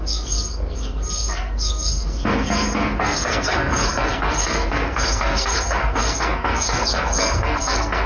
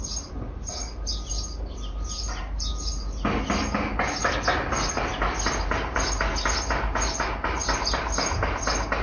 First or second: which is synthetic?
first